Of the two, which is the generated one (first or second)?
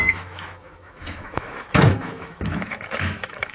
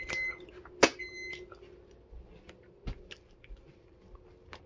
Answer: first